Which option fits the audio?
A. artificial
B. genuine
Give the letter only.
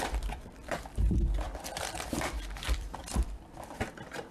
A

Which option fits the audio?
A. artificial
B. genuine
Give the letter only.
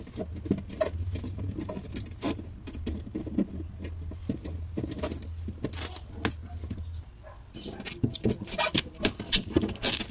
B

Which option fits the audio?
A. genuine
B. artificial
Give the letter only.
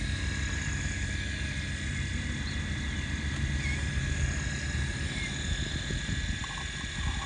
A